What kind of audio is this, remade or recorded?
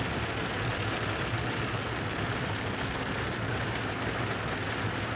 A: recorded